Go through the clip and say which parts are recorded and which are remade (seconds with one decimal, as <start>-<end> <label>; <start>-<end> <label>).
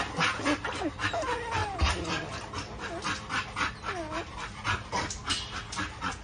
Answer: 0.0-6.2 recorded